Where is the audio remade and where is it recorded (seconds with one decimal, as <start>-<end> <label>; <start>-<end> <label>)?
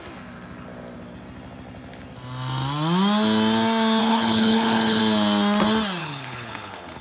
0.0-4.0 recorded; 4.0-5.0 remade; 5.0-6.0 recorded; 6.0-7.0 remade